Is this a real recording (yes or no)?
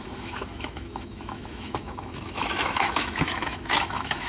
no